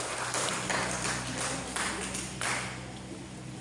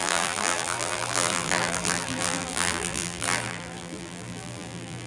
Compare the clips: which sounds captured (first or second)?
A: first